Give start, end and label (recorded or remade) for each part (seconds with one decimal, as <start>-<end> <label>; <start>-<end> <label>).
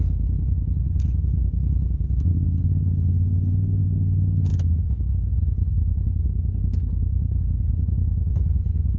0.0-9.0 remade